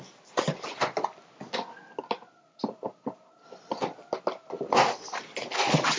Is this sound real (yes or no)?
yes